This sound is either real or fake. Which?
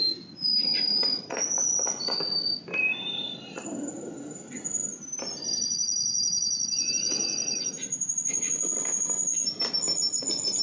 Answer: real